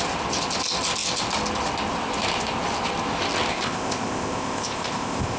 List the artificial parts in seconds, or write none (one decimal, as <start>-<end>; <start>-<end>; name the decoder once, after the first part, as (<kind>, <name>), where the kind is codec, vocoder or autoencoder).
3.5-5.4 (codec, ZipCodec)